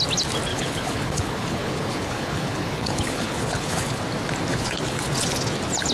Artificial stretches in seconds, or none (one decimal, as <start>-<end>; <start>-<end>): 0.5-4.0; 4.5-5.0